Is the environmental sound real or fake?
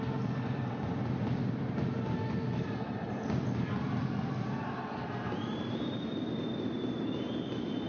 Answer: real